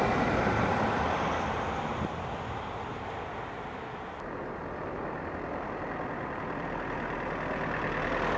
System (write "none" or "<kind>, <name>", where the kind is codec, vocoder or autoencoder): none